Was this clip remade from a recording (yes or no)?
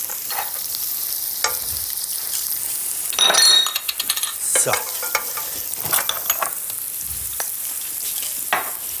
no